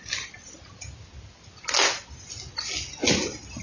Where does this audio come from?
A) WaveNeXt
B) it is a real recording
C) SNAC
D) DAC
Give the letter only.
B